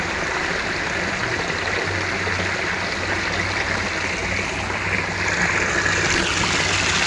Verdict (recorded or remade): recorded